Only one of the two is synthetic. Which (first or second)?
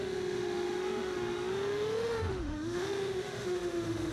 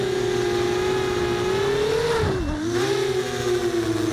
first